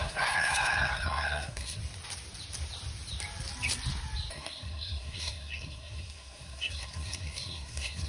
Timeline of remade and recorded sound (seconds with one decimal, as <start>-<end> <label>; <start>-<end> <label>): 0.0-1.8 remade; 1.8-4.3 recorded; 4.3-8.1 remade